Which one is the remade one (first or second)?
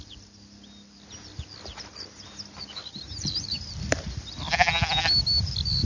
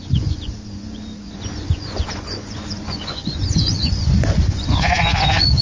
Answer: second